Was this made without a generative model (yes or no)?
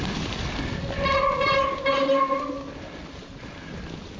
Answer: yes